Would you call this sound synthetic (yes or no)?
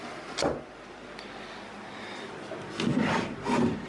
no